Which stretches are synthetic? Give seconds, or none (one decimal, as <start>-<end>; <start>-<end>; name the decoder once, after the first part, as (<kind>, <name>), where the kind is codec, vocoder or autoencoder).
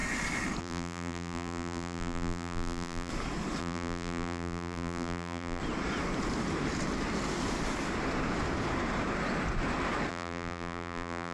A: 0.6-3.1 (vocoder, BigVGAN v2); 3.6-5.6; 10.1-11.3